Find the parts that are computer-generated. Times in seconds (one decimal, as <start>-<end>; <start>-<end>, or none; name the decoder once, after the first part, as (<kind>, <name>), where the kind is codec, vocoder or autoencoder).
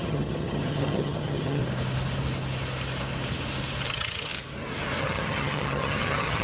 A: 0.0-1.6 (vocoder, HiFi-GAN); 3.9-4.3; 5.0-6.4